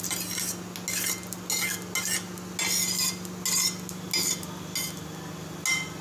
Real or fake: real